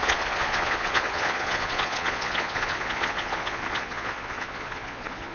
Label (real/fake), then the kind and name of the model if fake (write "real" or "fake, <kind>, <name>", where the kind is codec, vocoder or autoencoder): fake, vocoder, Vocos